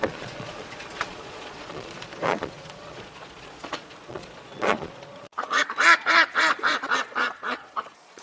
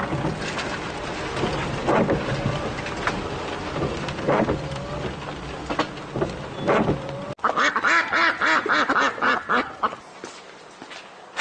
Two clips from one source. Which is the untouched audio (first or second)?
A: second